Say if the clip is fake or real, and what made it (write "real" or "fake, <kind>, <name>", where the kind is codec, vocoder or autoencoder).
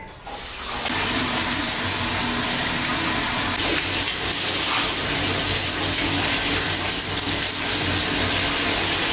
real